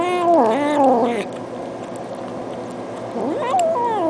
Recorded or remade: recorded